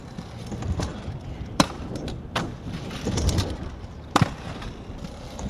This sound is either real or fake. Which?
fake